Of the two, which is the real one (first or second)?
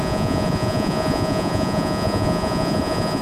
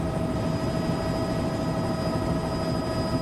second